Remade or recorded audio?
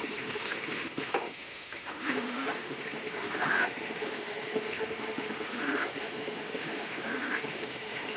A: remade